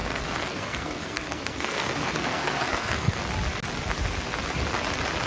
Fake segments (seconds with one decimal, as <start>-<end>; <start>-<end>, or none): 0.0-3.2